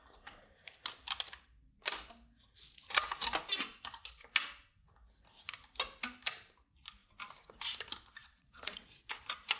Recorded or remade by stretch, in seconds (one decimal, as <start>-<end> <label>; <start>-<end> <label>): 0.0-8.2 recorded; 8.2-9.1 remade; 9.1-9.6 recorded